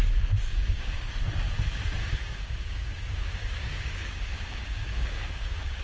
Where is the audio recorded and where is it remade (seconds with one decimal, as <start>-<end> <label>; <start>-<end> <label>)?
0.0-0.5 recorded; 0.5-1.1 remade; 1.1-2.0 recorded; 2.0-5.8 remade